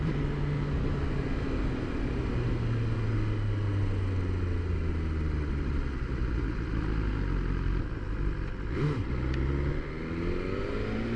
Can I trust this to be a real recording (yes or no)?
yes